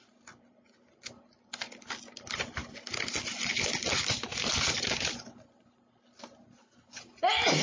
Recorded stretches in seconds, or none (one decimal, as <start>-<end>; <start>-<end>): 0.0-7.6